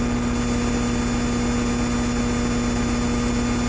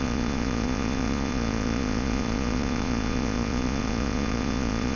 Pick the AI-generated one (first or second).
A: second